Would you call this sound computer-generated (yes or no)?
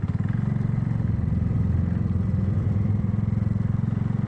no